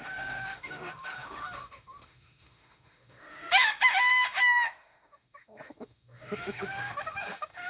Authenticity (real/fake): fake